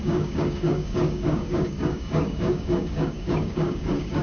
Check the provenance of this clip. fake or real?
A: fake